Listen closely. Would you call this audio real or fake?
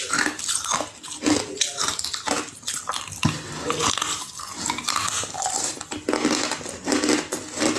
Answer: real